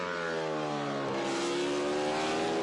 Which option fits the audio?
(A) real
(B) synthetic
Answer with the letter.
A